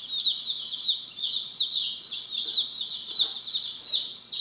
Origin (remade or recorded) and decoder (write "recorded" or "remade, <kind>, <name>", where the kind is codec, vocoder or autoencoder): recorded